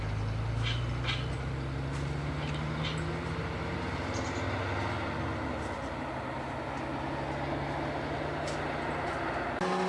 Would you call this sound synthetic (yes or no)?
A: no